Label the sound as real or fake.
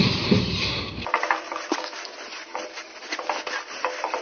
real